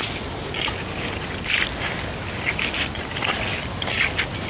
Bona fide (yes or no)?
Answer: yes